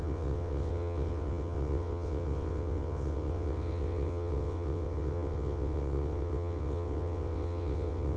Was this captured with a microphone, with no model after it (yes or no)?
no